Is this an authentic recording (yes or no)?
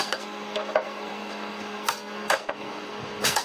no